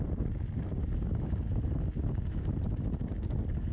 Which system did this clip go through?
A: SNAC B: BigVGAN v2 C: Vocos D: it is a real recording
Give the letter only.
D